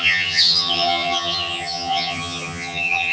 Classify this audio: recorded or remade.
remade